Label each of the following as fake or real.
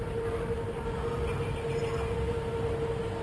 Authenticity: real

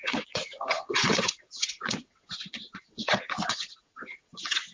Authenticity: fake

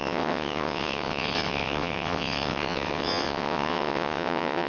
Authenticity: fake